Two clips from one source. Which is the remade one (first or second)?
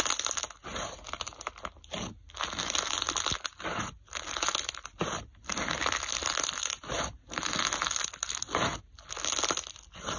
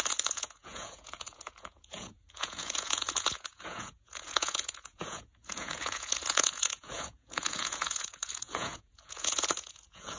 second